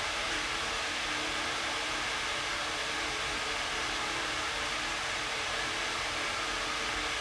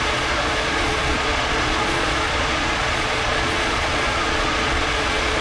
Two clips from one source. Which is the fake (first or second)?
second